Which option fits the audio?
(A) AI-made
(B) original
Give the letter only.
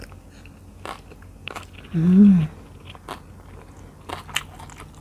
B